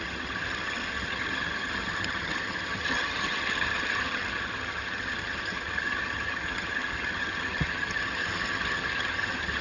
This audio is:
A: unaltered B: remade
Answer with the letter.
B